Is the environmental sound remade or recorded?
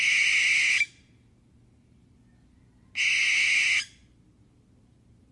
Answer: recorded